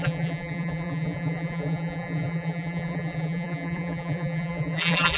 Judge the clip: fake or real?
fake